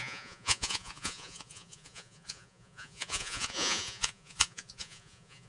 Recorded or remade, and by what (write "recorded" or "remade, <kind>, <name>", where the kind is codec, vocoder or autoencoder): remade, vocoder, Vocos